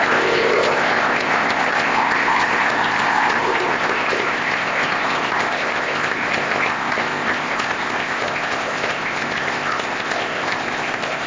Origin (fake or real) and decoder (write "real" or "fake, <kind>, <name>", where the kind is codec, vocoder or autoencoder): fake, codec, ZipCodec